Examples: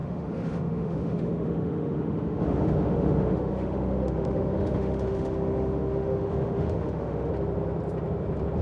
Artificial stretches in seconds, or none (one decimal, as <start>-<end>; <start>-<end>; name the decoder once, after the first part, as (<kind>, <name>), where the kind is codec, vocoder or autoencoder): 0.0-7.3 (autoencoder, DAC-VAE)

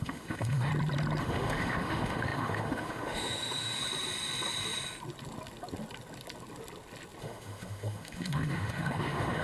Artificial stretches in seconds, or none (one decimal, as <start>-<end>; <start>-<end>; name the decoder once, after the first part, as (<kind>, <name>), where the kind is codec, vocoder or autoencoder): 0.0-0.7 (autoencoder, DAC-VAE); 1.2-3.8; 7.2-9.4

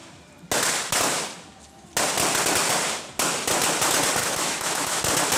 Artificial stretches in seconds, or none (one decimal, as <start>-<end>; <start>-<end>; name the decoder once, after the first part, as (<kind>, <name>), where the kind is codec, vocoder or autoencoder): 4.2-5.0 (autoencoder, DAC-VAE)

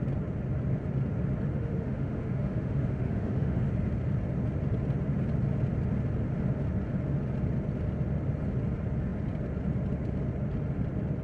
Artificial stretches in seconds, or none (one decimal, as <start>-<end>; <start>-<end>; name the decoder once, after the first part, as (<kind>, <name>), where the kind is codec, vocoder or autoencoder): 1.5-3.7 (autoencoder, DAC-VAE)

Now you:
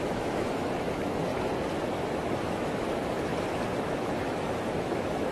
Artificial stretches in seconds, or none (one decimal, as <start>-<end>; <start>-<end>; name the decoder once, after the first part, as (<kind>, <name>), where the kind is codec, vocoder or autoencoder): 0.0-1.3 (autoencoder, DAC-VAE); 2.0-3.3; 3.8-5.3

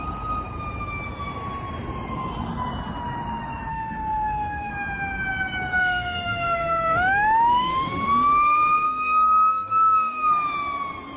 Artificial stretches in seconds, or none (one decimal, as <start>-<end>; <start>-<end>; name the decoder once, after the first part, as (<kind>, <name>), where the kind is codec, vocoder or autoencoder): 3.7-4.7 (autoencoder, DAC-VAE); 5.8-10.3